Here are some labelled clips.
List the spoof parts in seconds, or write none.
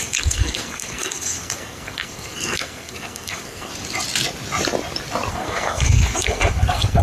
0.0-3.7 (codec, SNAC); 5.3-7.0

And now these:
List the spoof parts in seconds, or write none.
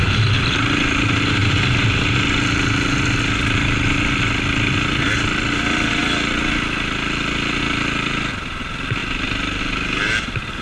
none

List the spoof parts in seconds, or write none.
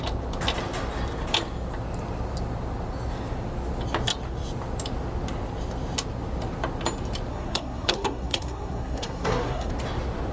7.3-9.7 (codec, SNAC)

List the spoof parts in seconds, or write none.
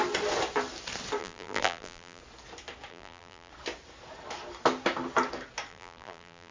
1.2-2.2 (vocoder, BigVGAN v2); 2.9-3.5; 5.7-6.5